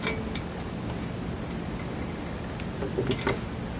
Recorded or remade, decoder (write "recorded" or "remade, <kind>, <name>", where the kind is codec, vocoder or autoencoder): recorded